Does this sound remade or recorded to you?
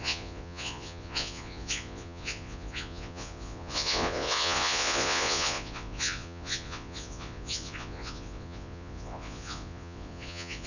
remade